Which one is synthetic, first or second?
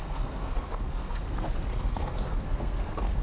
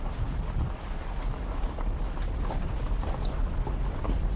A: first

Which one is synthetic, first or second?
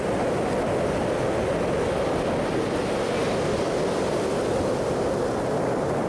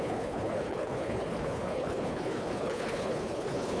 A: second